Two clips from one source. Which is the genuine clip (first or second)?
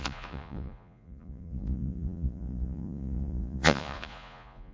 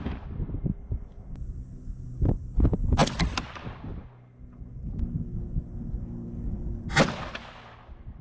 second